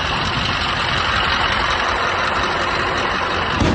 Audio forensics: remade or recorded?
recorded